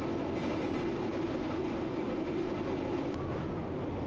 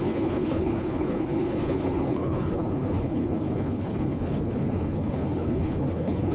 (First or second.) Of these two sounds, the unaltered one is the first